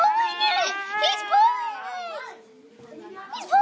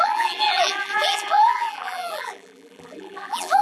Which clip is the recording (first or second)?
first